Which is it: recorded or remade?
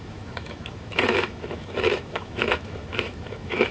remade